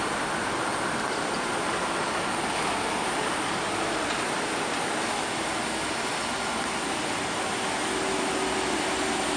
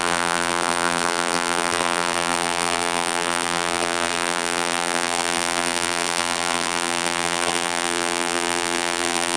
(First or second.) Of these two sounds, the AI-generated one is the second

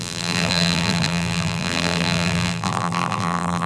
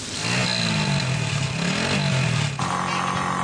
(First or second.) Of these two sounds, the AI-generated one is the first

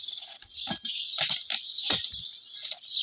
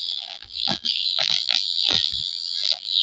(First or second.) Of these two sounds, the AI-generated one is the second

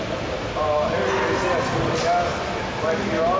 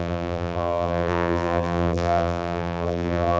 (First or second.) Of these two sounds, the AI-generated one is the second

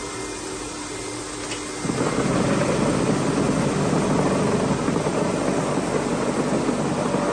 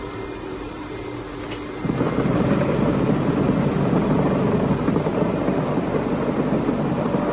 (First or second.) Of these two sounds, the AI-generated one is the second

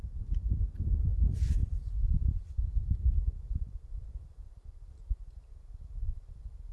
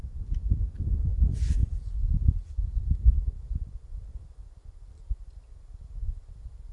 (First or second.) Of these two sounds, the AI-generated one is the first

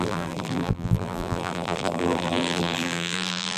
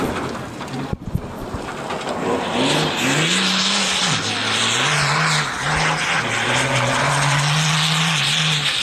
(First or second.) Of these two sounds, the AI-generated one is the first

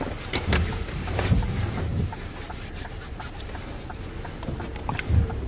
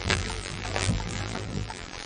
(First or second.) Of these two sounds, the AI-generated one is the second